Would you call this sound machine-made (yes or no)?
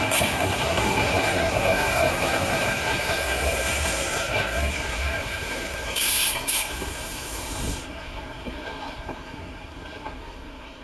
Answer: yes